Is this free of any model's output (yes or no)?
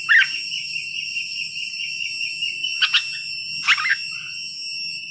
yes